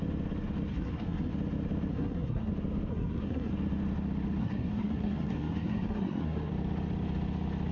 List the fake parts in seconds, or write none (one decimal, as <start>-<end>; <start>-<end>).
0.7-1.3; 1.9-2.5; 2.9-3.5; 4.4-6.5